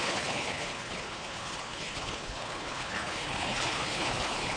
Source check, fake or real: fake